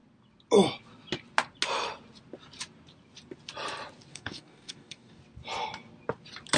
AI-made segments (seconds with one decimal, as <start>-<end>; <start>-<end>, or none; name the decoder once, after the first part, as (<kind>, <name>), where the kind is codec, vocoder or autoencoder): 4.1-5.2 (codec, DAC)